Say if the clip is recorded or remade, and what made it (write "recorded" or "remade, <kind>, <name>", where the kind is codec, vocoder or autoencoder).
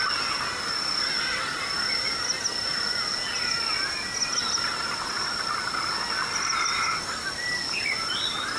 recorded